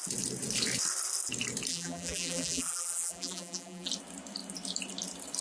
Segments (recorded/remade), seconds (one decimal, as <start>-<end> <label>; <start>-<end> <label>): 0.0-1.7 recorded; 1.7-3.9 remade; 3.9-5.4 recorded

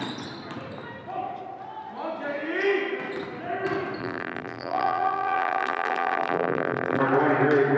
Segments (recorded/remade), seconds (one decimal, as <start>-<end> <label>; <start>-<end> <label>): 0.0-4.0 recorded; 4.0-7.0 remade; 7.0-7.8 recorded